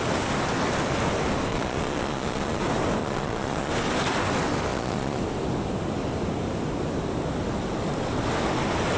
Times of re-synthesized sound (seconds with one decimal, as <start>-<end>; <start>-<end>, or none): 1.5-2.6; 3.0-3.7; 4.7-5.2